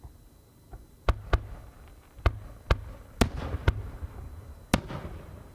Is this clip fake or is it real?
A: real